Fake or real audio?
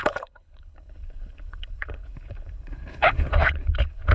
fake